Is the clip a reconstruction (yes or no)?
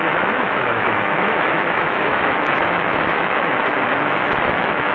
yes